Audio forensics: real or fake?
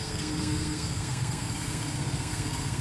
fake